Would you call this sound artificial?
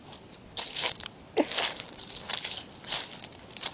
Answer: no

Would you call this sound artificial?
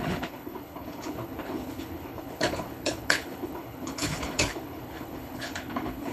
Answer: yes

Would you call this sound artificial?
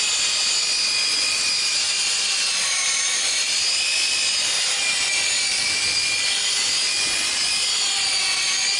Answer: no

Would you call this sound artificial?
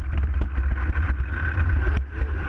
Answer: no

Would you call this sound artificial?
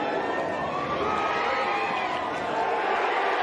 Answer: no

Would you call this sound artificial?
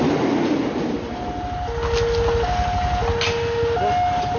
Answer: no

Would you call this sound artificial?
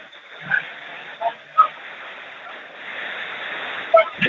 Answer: no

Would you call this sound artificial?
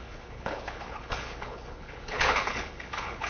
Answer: yes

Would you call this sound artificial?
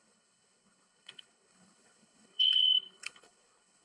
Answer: yes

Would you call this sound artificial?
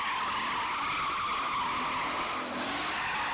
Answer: no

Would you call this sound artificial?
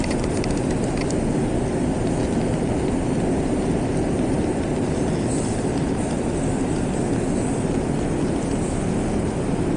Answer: no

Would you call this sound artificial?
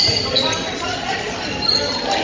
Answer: no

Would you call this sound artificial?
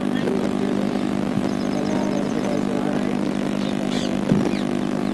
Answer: no